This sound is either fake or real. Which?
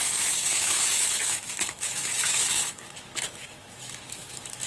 fake